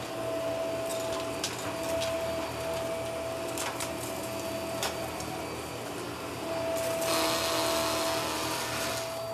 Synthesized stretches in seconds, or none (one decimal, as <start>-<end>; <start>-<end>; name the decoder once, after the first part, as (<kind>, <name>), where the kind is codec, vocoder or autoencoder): none

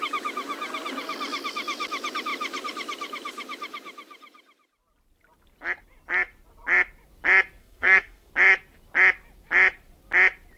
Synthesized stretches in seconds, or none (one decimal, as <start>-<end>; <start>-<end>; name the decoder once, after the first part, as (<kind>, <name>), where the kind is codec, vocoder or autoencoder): 7.6-8.3 (codec, SNAC)

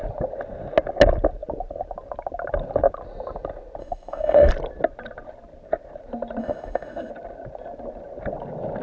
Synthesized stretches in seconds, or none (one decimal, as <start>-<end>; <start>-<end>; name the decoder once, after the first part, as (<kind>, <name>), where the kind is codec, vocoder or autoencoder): 3.8-4.5 (autoencoder, DAC-VAE); 6.4-7.1